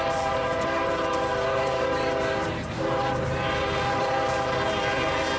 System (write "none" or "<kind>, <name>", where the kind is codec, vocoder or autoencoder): vocoder, BigVGAN v2